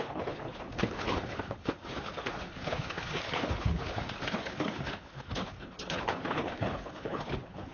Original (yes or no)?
no